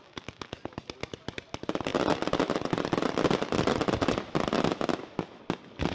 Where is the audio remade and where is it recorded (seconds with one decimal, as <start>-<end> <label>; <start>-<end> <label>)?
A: 0.0-5.9 recorded